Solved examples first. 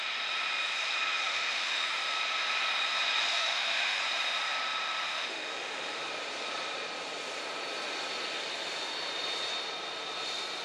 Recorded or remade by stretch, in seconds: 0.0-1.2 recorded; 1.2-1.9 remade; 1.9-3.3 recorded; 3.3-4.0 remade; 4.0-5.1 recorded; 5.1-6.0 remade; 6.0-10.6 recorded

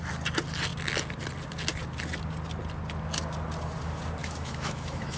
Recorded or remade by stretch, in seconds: 0.0-4.2 recorded; 4.2-5.2 remade

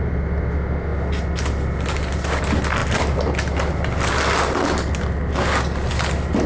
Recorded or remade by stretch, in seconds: 0.0-6.5 recorded